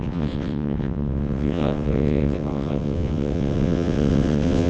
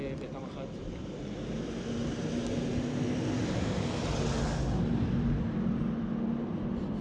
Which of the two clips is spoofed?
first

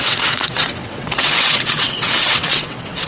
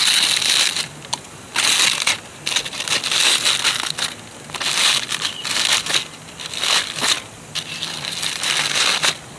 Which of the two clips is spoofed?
first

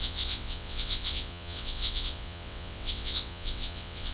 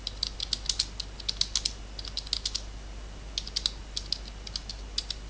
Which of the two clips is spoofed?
first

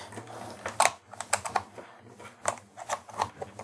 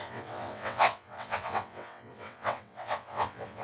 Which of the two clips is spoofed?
second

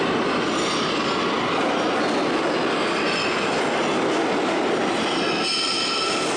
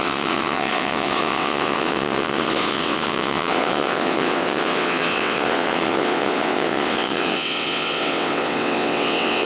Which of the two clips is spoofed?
second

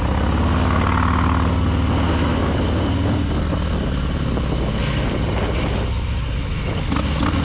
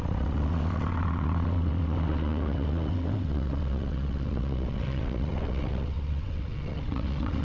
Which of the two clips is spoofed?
second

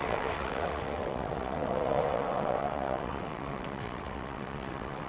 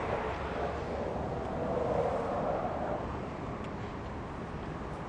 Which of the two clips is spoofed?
first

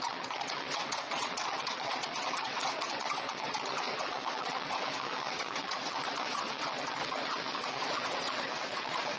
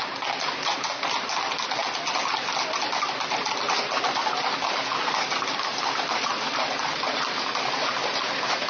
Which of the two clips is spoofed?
first